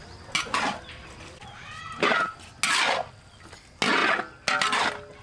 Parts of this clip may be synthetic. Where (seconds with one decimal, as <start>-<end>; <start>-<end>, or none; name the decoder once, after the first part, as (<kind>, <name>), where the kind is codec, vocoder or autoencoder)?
none